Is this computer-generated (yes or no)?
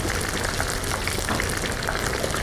no